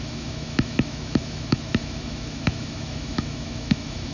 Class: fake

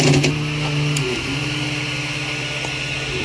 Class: real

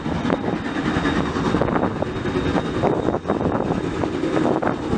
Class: real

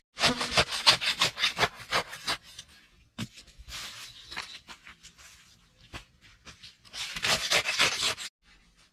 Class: real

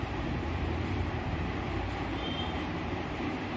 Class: fake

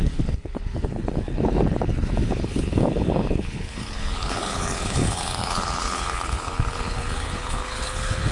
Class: fake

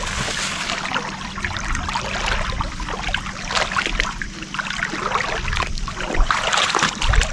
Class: real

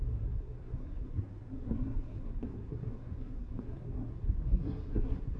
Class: fake